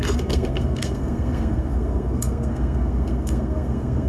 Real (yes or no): no